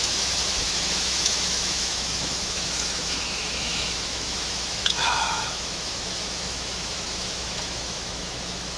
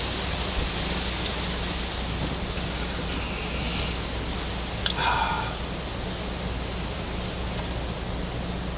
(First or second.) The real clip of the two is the second